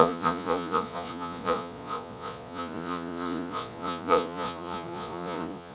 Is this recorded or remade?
remade